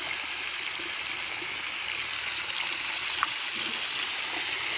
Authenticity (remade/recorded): recorded